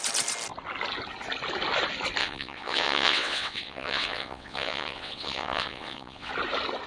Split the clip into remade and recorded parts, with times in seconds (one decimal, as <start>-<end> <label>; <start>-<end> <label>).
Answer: 0.0-2.2 recorded; 2.2-6.3 remade; 6.3-6.9 recorded